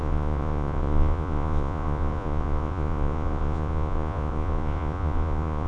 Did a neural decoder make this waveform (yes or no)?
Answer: yes